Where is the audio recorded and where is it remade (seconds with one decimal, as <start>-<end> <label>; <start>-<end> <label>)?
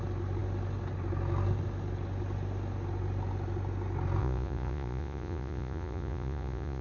0.0-4.2 recorded; 4.2-6.8 remade